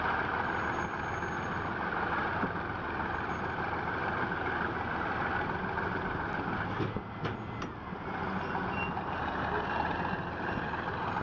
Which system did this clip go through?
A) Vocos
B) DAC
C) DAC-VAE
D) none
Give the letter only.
D